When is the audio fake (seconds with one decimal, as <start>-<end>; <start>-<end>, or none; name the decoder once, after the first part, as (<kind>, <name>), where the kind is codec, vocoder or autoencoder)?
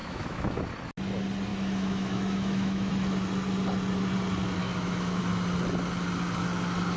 0.0-0.6 (autoencoder, DAC-VAE); 1.5-2.9; 4.6-5.2